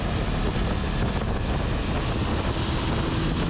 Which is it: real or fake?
real